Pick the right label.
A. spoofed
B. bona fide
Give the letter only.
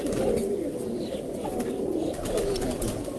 B